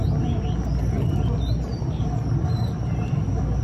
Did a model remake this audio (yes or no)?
no